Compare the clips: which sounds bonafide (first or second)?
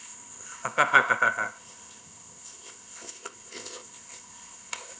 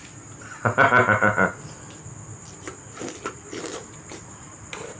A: second